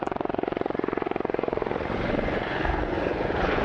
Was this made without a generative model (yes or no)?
no